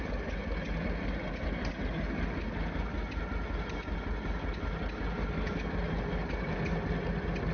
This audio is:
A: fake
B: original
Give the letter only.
B